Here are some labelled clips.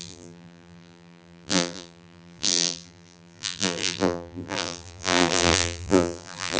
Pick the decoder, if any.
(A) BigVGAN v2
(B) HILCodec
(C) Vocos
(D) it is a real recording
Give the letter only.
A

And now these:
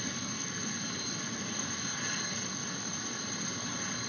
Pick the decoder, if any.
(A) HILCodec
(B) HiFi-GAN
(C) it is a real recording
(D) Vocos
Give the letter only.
C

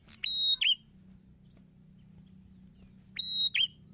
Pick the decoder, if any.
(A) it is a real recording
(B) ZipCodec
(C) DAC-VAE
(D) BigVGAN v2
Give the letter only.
A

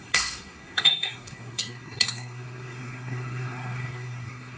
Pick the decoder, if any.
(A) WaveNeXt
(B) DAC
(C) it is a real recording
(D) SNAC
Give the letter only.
D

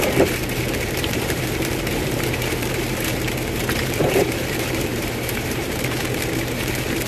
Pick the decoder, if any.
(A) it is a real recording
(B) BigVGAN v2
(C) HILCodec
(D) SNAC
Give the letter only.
B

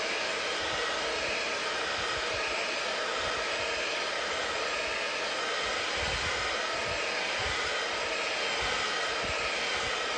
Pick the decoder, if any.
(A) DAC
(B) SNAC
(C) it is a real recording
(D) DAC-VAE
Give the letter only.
C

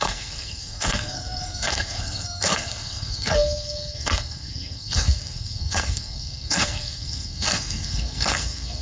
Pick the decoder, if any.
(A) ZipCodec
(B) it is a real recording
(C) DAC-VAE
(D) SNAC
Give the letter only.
D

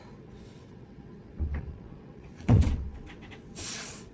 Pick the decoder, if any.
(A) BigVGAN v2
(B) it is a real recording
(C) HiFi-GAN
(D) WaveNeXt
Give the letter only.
D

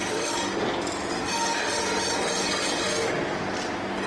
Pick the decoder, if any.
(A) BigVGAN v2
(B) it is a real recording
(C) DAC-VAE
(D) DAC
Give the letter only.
B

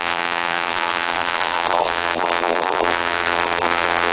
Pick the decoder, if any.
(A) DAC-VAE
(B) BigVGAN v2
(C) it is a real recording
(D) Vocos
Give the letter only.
B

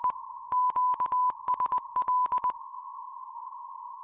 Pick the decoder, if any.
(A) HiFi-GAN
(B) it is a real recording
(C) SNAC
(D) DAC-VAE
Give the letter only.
D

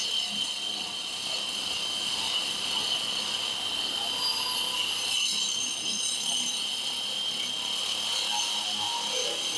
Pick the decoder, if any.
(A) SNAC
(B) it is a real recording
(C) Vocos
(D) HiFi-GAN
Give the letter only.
B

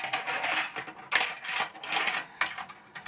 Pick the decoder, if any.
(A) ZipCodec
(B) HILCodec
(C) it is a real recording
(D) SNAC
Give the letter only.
C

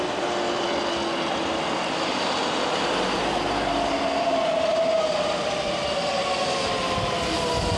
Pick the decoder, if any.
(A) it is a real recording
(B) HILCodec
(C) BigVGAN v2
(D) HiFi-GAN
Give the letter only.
A